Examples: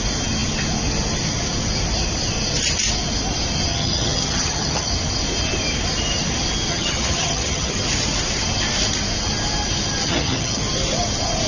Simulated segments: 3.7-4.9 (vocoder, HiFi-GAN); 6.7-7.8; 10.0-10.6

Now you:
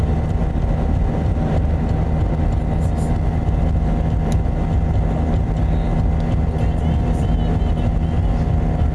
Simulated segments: none

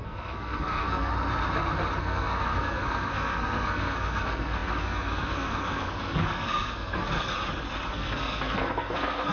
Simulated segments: 0.0-1.1 (codec, SNAC); 2.0-7.3; 7.9-9.3

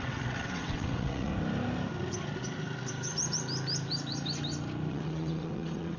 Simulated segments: 0.0-1.3 (vocoder, WaveNeXt); 4.9-6.0